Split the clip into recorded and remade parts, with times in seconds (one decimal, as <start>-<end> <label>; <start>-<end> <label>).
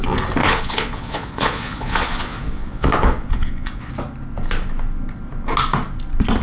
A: 0.0-0.4 recorded; 0.4-3.9 remade; 3.9-6.4 recorded